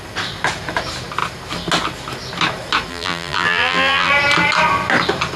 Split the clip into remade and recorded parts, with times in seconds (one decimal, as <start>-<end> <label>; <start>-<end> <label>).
0.0-2.9 recorded; 2.9-4.1 remade; 4.1-5.4 recorded